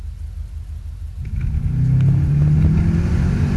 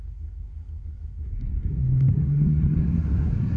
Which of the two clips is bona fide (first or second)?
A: first